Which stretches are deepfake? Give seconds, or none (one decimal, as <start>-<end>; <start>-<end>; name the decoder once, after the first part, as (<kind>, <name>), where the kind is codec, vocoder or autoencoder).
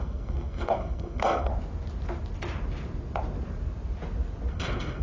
0.0-1.5 (codec, SNAC); 4.5-5.0